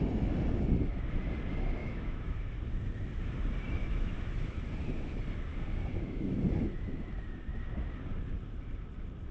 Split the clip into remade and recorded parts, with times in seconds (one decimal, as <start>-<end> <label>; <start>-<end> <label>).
0.0-1.8 recorded; 1.8-2.5 remade; 2.5-3.8 recorded; 3.8-4.7 remade; 4.7-5.9 recorded; 5.9-6.4 remade; 6.4-9.3 recorded